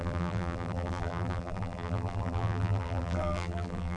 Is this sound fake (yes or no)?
yes